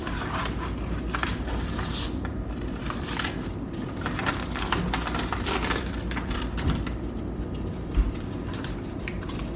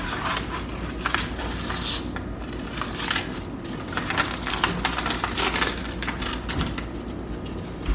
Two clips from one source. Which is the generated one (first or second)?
first